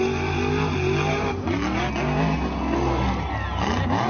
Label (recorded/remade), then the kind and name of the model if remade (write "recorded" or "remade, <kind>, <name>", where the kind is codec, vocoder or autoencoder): recorded